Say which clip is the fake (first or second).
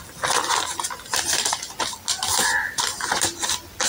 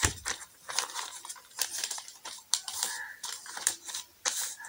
second